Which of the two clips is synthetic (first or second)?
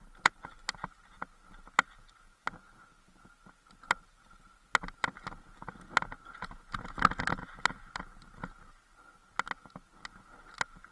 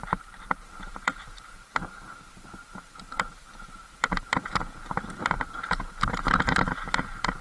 second